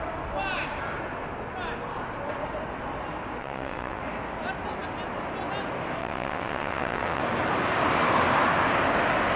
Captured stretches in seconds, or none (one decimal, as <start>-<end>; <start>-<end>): 0.0-3.4; 4.0-6.0; 7.2-9.4